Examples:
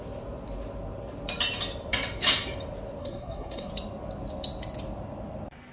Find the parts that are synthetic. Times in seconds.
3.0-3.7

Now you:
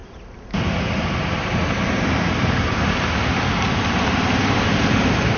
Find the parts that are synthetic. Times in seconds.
none

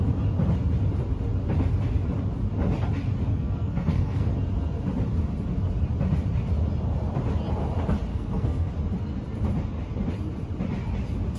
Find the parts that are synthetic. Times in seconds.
3.3-4.3; 8.1-8.7

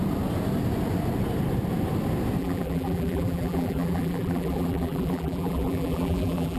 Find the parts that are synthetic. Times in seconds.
2.4-6.6

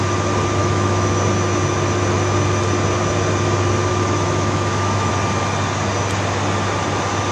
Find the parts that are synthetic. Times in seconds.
0.6-1.2; 3.9-5.1

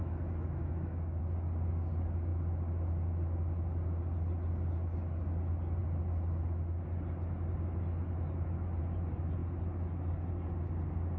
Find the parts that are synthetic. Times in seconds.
0.0-1.2

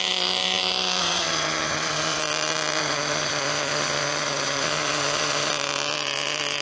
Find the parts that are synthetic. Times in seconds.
1.0-2.2; 2.8-5.5

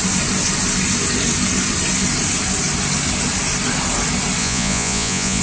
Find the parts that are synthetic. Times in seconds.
4.4-5.4